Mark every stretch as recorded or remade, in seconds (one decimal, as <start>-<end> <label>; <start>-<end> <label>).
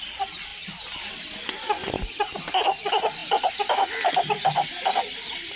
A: 0.0-5.6 recorded